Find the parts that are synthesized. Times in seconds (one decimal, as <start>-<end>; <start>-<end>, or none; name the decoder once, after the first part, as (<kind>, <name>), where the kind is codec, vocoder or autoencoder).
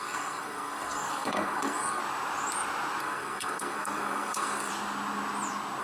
0.0-2.0 (codec, SNAC); 3.0-4.7